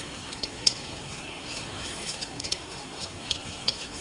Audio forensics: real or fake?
fake